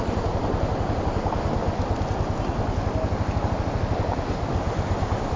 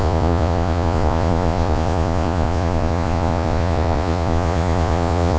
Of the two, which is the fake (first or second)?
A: second